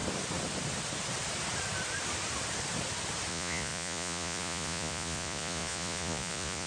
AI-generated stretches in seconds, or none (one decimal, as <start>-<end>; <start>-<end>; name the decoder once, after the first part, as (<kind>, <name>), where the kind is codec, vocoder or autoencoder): 3.3-6.7 (vocoder, Vocos)